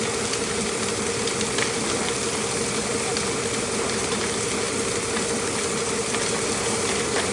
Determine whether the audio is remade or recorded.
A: recorded